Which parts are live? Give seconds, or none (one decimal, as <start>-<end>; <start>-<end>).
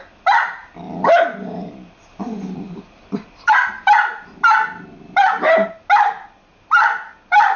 0.0-0.6; 3.7-7.6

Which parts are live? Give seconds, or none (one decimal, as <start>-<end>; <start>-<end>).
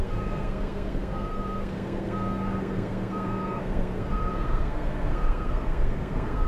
none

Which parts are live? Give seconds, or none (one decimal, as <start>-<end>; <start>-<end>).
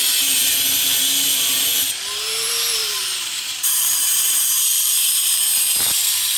none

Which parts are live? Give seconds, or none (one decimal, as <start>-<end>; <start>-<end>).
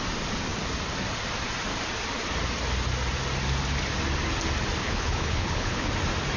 0.0-4.8; 5.9-6.4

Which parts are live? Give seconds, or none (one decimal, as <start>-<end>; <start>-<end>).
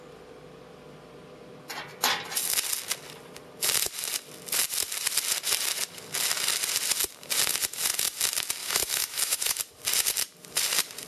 0.0-8.6; 9.6-11.1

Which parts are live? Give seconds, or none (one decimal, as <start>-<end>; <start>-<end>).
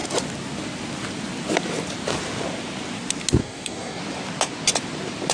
0.0-3.4; 4.0-5.3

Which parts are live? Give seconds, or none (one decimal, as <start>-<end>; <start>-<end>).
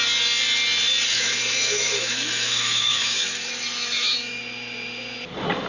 0.0-1.1; 4.4-5.7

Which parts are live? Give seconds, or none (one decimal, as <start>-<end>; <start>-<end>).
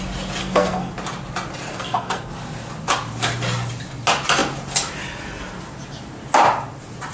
0.0-0.4; 0.9-1.7; 2.3-7.1